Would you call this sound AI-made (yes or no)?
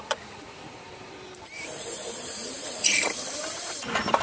yes